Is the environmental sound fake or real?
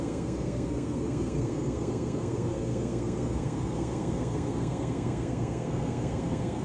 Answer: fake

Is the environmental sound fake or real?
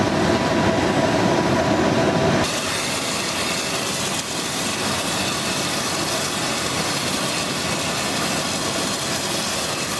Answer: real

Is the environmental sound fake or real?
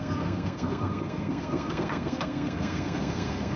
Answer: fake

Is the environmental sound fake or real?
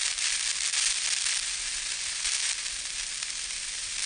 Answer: real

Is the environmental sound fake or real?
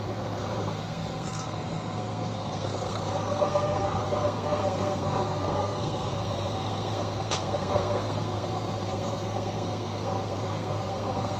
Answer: fake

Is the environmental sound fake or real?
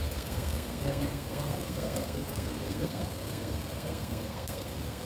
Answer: fake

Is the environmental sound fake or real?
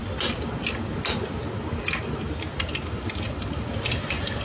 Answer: real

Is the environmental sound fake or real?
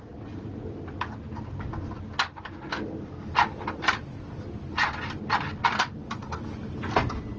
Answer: real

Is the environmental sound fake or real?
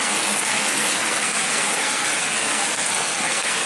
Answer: fake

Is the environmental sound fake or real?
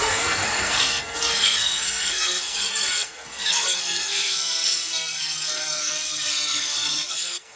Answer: fake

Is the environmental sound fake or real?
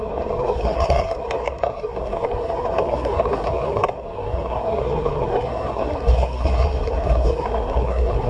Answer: fake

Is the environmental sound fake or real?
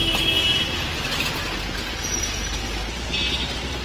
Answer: real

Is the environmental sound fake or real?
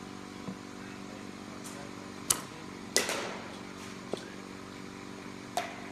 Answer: real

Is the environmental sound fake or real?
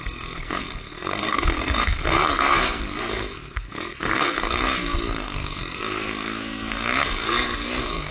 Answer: fake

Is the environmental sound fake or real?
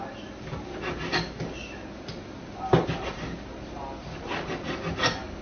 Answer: real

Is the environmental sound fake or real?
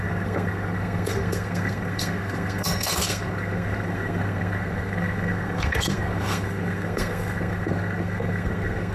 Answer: fake